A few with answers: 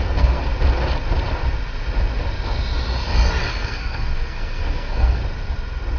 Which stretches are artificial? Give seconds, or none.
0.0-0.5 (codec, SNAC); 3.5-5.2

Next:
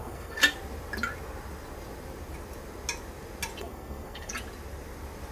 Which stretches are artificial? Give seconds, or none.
0.0-0.4 (codec, SNAC); 3.6-4.3